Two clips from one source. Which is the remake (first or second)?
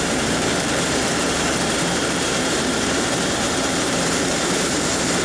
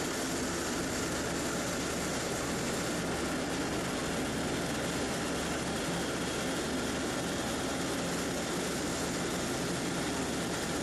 first